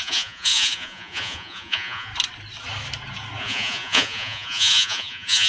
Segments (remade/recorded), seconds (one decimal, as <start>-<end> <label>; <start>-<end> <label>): 0.0-2.1 remade; 2.1-3.4 recorded; 3.4-5.5 remade